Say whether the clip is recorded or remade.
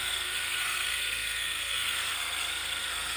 remade